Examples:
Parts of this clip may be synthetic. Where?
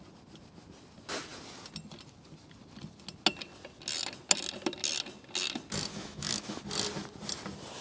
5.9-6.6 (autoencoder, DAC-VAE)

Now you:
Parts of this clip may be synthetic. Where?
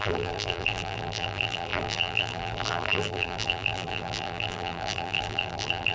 0.0-5.9 (vocoder, BigVGAN v2)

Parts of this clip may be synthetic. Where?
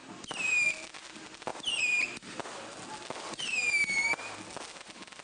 none